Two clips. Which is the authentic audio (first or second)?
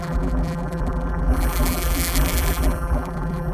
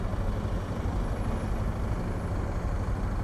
second